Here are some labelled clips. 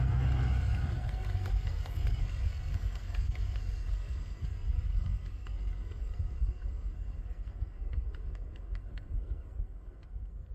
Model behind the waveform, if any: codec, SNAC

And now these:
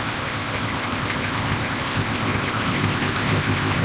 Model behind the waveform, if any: codec, ZipCodec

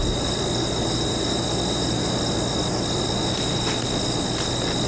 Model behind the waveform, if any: none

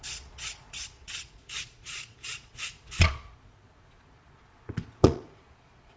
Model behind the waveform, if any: vocoder, Vocos